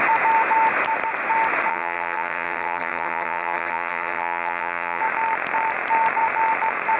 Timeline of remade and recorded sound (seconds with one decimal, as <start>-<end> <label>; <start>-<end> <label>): 0.0-1.7 recorded; 1.7-5.0 remade; 5.0-7.0 recorded